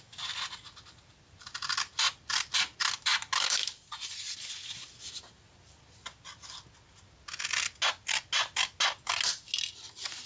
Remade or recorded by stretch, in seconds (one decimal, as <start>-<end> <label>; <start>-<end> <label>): 0.0-10.3 recorded